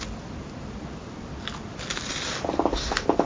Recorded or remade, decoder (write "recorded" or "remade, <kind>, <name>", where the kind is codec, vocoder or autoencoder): recorded